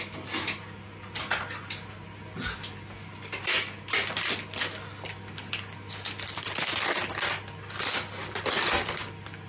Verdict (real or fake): real